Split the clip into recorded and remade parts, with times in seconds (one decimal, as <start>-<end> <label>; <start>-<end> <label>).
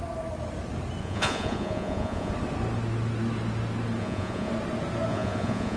0.0-1.0 recorded; 1.0-2.3 remade; 2.3-4.0 recorded; 4.0-4.5 remade; 4.5-5.1 recorded; 5.1-5.8 remade